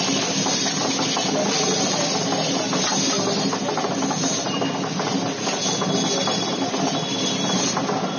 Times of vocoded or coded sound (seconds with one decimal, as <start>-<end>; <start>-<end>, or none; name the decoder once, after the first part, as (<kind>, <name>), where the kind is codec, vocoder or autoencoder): none